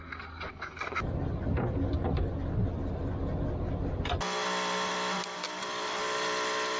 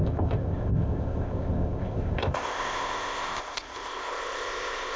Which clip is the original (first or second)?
first